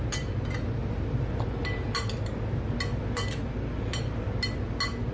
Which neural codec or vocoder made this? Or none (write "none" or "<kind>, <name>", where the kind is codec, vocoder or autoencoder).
none